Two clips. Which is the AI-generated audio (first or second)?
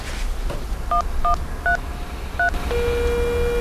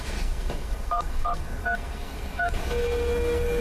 second